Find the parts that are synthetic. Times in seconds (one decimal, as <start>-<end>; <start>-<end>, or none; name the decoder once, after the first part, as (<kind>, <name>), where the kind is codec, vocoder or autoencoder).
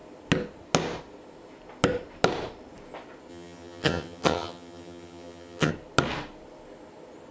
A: 3.3-5.7 (vocoder, HiFi-GAN)